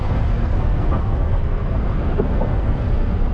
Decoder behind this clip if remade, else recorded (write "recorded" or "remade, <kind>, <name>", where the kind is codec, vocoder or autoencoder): remade, codec, SNAC